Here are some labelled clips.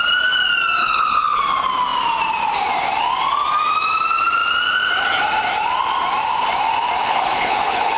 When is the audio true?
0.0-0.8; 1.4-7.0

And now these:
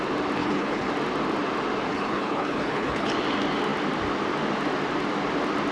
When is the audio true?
0.0-0.4; 0.9-1.9; 3.1-5.7

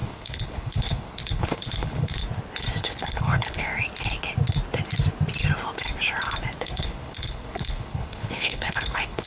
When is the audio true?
2.2-2.8; 3.7-6.6